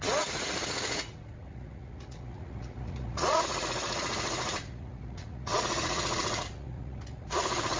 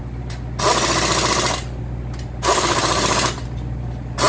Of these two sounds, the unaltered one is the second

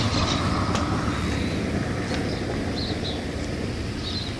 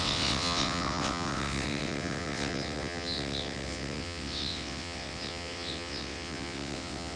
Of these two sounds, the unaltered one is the first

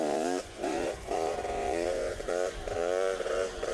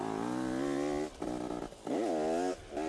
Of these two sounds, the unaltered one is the second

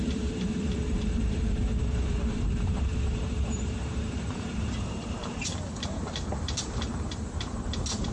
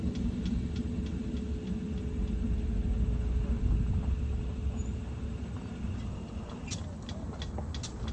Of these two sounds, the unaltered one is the second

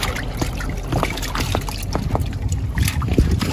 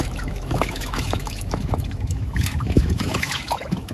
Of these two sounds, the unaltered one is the first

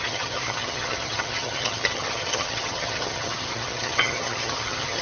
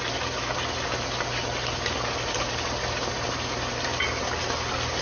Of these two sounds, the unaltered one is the second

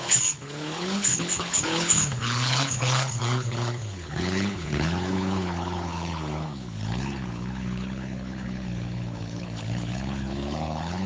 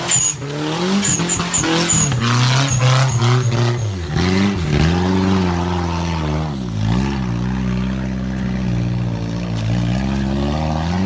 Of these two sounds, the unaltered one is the second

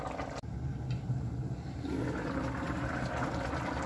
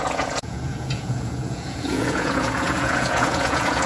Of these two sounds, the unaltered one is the first